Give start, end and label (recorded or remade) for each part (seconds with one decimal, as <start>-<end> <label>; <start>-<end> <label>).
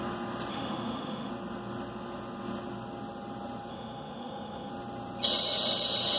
0.0-0.5 recorded; 0.5-1.3 remade; 1.3-3.7 recorded; 3.7-4.7 remade; 4.7-6.2 recorded